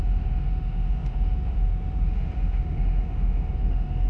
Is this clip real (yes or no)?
no